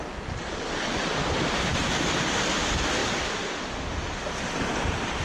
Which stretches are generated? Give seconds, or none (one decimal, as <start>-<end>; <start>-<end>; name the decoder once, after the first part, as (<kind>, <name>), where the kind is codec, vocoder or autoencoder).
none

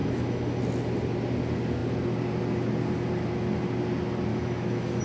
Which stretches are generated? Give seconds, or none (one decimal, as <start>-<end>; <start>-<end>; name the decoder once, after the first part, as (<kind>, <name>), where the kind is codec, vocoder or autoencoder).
0.0-0.6 (autoencoder, DAC-VAE); 4.3-5.0

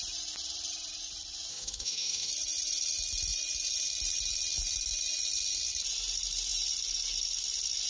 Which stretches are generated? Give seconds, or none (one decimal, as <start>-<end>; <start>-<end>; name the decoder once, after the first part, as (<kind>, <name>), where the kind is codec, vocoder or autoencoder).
1.5-2.3 (autoencoder, DAC-VAE)

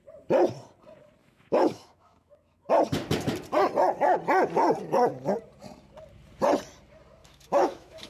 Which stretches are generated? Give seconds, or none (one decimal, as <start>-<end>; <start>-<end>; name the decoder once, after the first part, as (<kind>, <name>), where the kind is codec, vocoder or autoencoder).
1.2-2.7 (autoencoder, DAC-VAE); 7.2-8.1

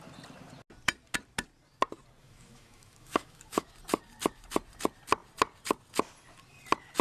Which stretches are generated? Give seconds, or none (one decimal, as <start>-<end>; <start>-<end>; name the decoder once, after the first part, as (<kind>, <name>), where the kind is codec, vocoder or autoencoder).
2.2-3.7 (autoencoder, DAC-VAE)

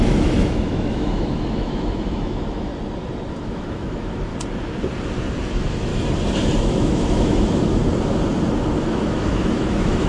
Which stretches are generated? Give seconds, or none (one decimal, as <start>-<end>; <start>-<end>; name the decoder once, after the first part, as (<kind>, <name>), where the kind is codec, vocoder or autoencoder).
0.0-2.7 (autoencoder, DAC-VAE); 3.4-4.3; 5.4-5.9; 6.6-7.8; 8.8-10.1

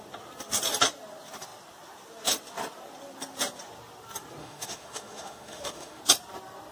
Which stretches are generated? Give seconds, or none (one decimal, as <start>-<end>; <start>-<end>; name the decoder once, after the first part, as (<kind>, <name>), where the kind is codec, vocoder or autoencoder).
4.4-6.0 (autoencoder, DAC-VAE)